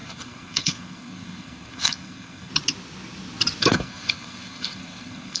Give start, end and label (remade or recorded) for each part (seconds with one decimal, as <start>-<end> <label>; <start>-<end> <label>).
0.0-2.5 remade; 2.5-3.6 recorded; 3.6-5.4 remade